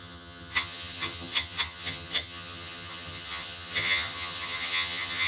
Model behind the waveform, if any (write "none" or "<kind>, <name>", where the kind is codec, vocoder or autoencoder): vocoder, HiFi-GAN